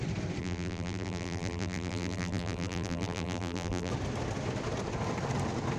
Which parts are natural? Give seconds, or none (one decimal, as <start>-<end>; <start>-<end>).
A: 0.0-0.4; 3.9-5.8

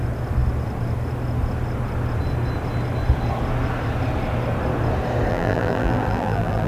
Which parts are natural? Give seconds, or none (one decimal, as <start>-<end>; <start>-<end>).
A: 0.0-5.3